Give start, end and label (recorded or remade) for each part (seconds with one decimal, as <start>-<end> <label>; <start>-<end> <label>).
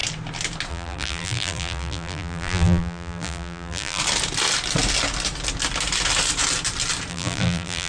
0.0-0.7 recorded; 0.7-4.0 remade; 4.0-7.1 recorded; 7.1-7.9 remade